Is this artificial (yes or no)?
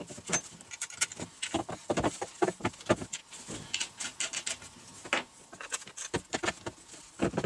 no